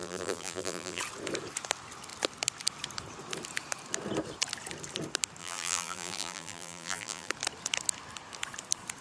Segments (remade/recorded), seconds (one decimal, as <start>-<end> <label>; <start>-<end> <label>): 0.0-1.0 remade; 1.0-5.4 recorded; 5.4-7.3 remade; 7.3-9.0 recorded